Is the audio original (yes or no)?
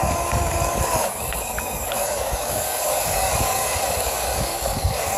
no